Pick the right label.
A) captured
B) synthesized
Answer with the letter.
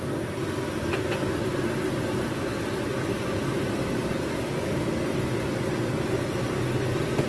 A